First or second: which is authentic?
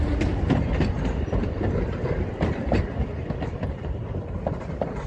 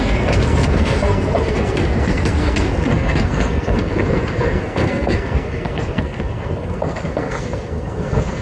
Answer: first